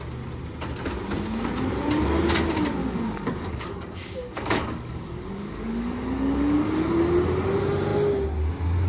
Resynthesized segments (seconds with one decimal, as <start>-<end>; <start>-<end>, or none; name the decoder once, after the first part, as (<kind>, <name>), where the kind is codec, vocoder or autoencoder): 2.8-6.9 (codec, DAC)